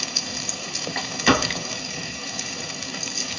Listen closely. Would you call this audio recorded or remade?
remade